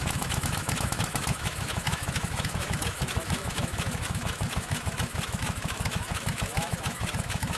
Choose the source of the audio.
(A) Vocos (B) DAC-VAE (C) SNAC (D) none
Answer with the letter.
B